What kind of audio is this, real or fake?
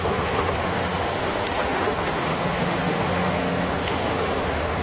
fake